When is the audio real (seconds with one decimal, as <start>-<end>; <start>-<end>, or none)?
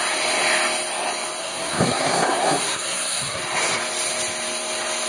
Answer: 0.0-1.4; 3.4-5.1